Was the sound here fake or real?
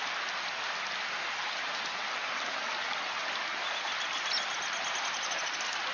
real